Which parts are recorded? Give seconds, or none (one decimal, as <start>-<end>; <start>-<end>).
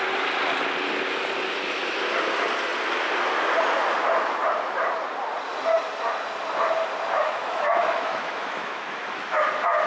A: 0.0-7.2; 9.2-9.9